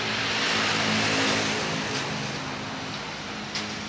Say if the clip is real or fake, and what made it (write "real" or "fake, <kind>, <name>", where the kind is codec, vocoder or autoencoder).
real